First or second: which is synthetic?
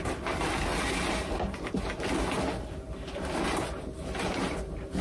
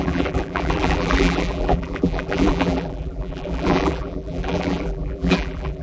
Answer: second